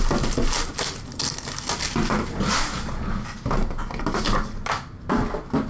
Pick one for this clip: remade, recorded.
recorded